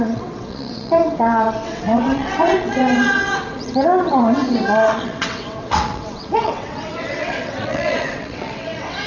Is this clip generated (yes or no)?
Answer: yes